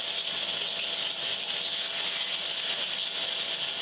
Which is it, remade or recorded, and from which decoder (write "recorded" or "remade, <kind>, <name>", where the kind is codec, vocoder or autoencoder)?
recorded